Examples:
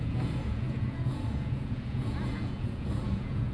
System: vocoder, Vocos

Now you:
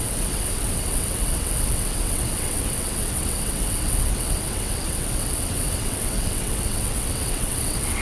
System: vocoder, WaveNeXt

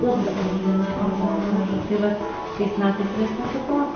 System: none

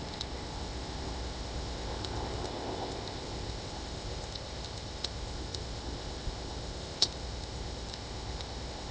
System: codec, ZipCodec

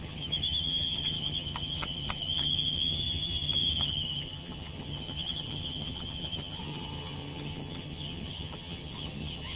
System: vocoder, HiFi-GAN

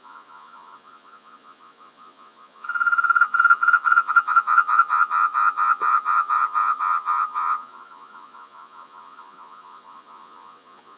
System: vocoder, Vocos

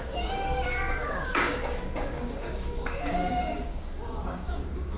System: codec, DAC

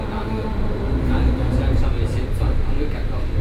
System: none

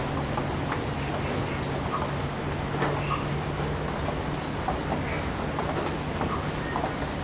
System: none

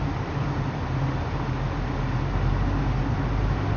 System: none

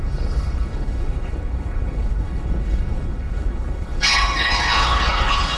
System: codec, HILCodec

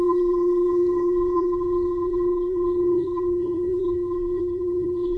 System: codec, SNAC